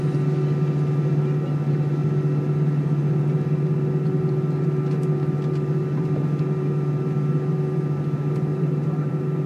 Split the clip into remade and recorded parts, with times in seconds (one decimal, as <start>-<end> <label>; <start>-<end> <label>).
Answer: 0.0-8.5 recorded; 8.5-9.1 remade; 9.1-9.5 recorded